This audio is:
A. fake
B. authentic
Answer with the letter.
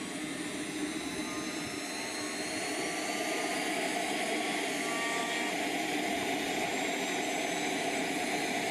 B